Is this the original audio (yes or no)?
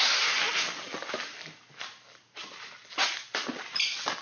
yes